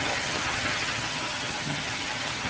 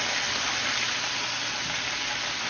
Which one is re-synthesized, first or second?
first